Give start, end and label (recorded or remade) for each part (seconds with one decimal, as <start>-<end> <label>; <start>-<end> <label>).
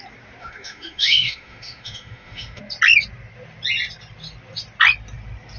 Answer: 0.0-0.4 recorded; 0.4-2.6 remade; 2.6-5.6 recorded